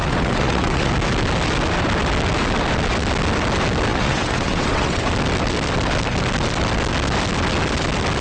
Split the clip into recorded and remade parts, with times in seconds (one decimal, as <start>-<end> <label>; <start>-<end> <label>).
0.0-0.9 remade; 0.9-3.9 recorded; 3.9-5.1 remade; 5.1-8.2 recorded